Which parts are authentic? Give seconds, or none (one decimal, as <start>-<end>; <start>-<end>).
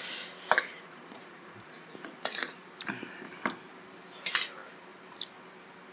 0.0-0.7; 2.7-5.9